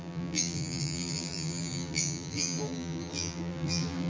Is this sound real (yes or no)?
no